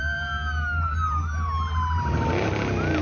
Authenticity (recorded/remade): recorded